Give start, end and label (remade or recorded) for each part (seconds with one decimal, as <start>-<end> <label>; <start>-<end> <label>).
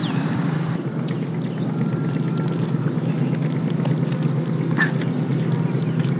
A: 0.0-0.7 remade; 0.7-6.2 recorded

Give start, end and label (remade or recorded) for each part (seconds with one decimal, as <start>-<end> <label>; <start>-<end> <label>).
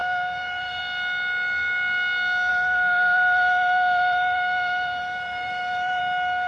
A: 0.0-0.8 remade; 0.8-2.5 recorded; 2.5-6.0 remade; 6.0-6.5 recorded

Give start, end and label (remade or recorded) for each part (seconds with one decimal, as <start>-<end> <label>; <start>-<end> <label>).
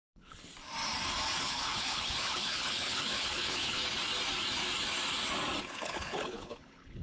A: 0.0-0.5 remade; 0.5-1.4 recorded; 1.4-3.8 remade; 3.8-5.6 recorded; 5.6-7.0 remade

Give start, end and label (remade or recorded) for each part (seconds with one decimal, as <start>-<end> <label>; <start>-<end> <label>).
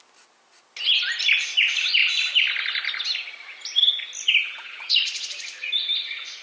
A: 0.0-4.7 recorded; 4.7-5.3 remade; 5.3-6.4 recorded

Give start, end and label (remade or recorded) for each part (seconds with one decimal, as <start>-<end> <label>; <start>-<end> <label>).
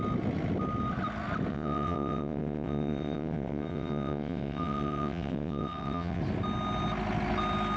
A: 0.0-1.5 recorded; 1.5-6.2 remade; 6.2-7.8 recorded